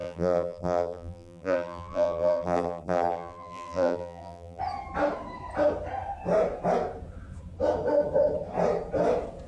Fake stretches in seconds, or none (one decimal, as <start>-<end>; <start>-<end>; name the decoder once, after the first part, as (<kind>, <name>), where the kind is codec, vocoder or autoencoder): 0.0-4.6 (vocoder, BigVGAN v2)